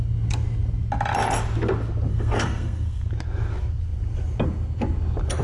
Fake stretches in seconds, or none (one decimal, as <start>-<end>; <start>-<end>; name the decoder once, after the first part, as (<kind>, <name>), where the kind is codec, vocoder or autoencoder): 2.1-3.1 (codec, SNAC)